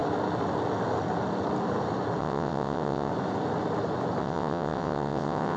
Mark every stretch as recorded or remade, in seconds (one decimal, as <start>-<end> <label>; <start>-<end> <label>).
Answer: 0.0-2.2 recorded; 2.2-3.1 remade; 3.1-4.2 recorded; 4.2-5.6 remade

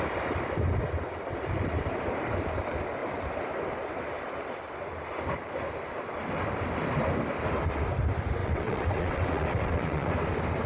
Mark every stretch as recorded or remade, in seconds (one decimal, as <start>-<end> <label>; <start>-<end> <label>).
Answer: 0.0-8.4 recorded; 8.4-10.1 remade; 10.1-10.7 recorded

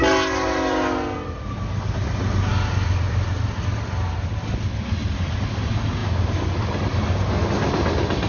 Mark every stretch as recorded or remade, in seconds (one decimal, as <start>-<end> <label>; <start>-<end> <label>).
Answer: 0.0-8.3 recorded

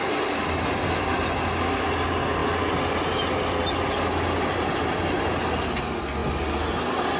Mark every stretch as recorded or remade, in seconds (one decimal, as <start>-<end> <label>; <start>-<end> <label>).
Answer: 0.0-7.2 recorded

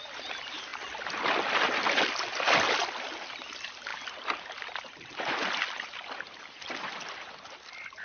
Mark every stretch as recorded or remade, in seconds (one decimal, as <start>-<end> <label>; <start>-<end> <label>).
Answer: 0.0-8.0 recorded